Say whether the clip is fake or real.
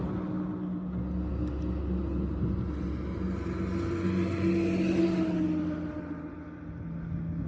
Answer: real